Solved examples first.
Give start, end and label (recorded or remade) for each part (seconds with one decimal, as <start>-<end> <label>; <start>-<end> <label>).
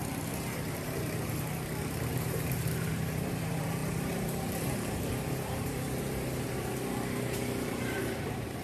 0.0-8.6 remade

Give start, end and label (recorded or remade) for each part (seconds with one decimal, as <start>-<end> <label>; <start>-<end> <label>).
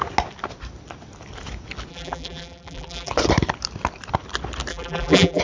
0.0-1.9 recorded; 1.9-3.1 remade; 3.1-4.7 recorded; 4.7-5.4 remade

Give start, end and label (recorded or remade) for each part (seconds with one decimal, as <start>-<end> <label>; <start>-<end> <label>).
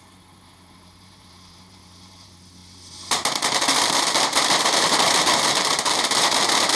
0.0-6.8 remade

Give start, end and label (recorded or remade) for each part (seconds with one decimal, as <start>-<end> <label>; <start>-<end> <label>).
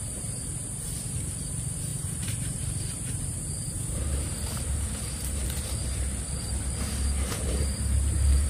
0.0-8.5 remade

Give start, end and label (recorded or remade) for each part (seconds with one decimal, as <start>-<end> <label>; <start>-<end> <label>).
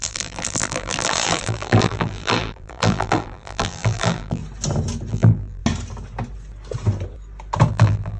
0.0-4.4 remade; 4.4-5.1 recorded; 5.1-5.6 remade; 5.6-7.7 recorded; 7.7-8.2 remade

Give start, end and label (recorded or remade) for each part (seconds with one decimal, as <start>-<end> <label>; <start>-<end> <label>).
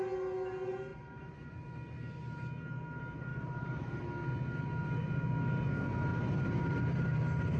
0.0-0.9 recorded; 0.9-1.7 remade; 1.7-3.3 recorded; 3.3-4.0 remade; 4.0-6.1 recorded; 6.1-7.6 remade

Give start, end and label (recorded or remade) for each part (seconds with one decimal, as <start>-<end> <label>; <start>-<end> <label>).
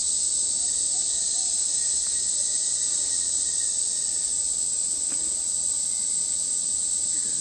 0.0-2.8 recorded; 2.8-7.4 remade